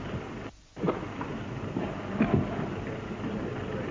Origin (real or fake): real